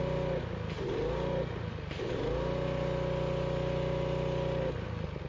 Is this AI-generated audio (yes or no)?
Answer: no